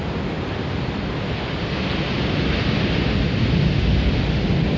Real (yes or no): yes